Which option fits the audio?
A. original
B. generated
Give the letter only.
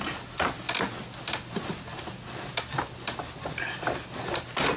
A